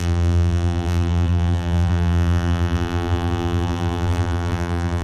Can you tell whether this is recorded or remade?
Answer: remade